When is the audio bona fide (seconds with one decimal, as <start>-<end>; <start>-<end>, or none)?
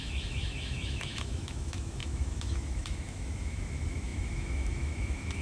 none